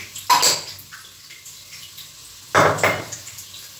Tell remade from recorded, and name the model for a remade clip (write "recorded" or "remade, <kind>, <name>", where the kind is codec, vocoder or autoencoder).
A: recorded